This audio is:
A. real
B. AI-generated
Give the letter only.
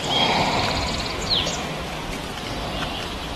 A